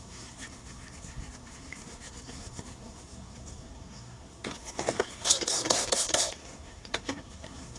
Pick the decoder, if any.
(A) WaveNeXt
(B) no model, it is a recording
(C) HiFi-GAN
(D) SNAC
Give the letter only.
D